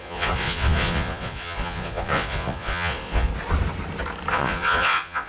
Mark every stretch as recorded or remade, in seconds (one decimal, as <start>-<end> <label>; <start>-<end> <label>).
0.0-3.3 remade; 3.3-4.3 recorded; 4.3-5.3 remade